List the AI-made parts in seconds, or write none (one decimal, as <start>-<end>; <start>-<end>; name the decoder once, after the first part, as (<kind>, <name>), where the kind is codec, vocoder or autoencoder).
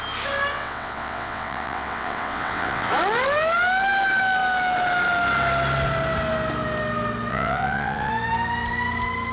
0.5-2.9 (vocoder, WaveNeXt); 7.3-8.1